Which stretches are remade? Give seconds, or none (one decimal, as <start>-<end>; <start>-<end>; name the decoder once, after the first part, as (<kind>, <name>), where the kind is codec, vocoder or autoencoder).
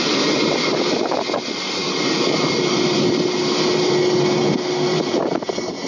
none